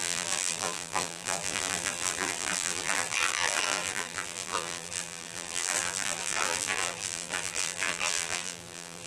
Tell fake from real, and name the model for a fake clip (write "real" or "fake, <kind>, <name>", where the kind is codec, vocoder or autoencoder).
fake, vocoder, BigVGAN v2